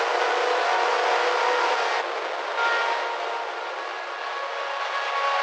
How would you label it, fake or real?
real